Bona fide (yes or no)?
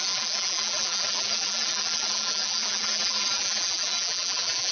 no